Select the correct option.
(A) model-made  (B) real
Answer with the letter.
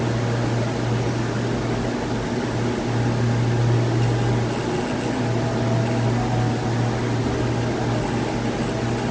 B